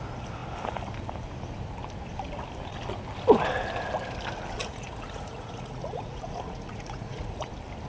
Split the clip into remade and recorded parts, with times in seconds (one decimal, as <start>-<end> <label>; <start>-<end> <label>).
0.0-4.6 recorded; 4.6-7.5 remade; 7.5-7.9 recorded